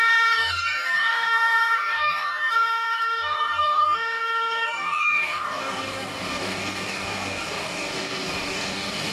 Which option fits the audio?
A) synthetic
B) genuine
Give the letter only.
A